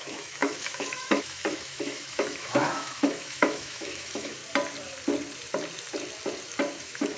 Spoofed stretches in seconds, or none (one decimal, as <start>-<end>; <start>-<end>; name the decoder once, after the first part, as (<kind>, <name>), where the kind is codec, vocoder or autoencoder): 0.0-4.4 (autoencoder, DAC-VAE); 6.8-7.2